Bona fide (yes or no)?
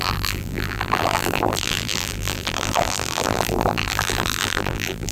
no